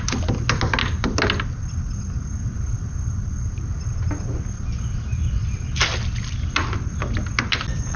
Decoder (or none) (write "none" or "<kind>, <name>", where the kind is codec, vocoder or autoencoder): none